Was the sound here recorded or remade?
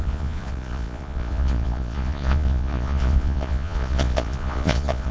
remade